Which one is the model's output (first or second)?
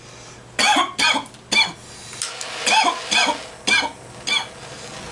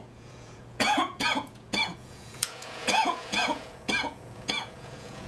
second